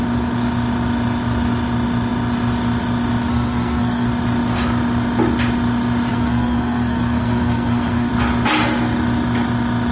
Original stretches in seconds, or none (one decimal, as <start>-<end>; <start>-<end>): 0.0-3.3; 4.1-6.1; 8.1-9.9